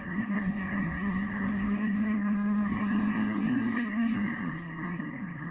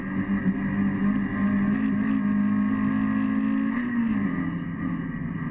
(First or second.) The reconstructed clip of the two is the first